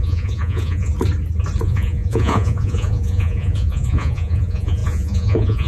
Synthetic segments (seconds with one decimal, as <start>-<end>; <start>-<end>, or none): 0.0-0.9; 1.6-5.7